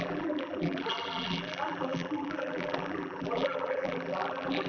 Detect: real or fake fake